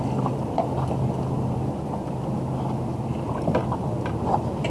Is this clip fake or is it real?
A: real